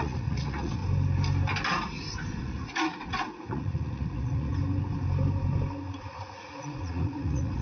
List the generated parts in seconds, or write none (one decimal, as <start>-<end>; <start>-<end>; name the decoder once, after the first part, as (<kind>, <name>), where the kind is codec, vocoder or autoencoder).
0.0-0.8 (vocoder, Vocos); 2.4-4.5; 6.0-7.6